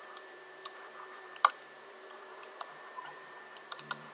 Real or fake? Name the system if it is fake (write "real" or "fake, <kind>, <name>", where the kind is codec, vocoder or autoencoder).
fake, vocoder, BigVGAN v2